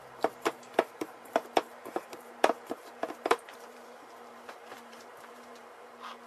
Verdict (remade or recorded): remade